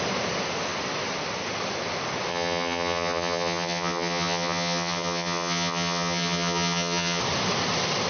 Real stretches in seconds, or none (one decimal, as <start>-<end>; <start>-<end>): 0.0-2.3; 7.2-8.1